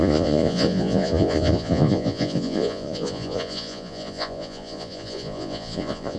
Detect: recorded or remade remade